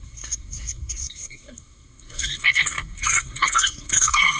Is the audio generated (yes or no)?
yes